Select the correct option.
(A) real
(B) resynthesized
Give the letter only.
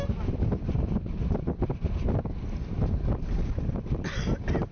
A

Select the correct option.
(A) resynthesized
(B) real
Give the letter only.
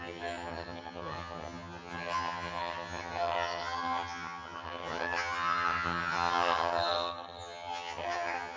A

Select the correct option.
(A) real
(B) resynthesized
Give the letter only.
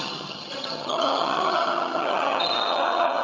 B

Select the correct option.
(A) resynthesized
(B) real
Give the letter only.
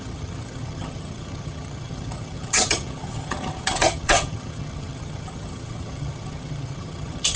A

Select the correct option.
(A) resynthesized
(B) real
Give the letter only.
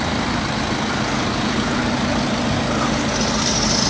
B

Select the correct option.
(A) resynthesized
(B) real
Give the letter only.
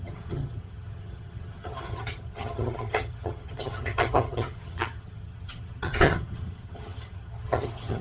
A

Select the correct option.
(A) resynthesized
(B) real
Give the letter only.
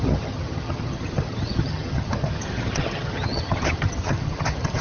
A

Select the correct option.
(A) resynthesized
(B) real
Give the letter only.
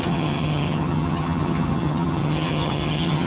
A